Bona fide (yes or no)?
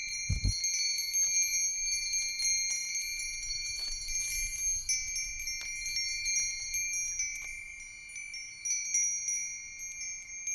yes